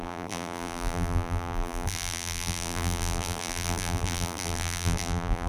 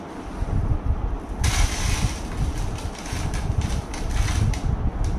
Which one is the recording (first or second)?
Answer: second